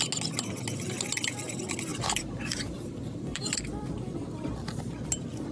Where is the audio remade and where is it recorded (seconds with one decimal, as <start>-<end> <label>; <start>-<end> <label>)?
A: 0.0-1.9 recorded; 1.9-4.8 remade; 4.8-5.5 recorded